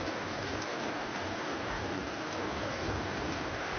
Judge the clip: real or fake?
fake